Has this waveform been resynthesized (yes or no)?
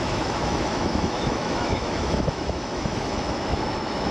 yes